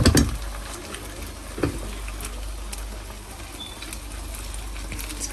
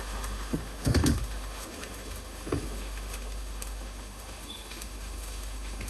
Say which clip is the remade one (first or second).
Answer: second